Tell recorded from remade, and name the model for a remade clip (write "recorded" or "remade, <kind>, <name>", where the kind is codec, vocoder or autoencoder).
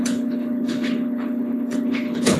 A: remade, codec, HILCodec